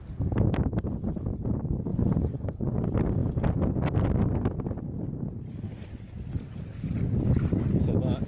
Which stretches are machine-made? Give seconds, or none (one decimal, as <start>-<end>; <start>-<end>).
1.9-2.8